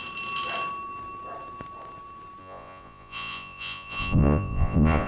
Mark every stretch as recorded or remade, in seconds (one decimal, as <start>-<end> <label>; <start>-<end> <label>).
0.0-2.4 recorded; 2.4-5.1 remade